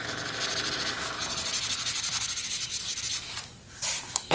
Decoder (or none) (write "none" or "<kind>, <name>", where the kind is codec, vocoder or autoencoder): none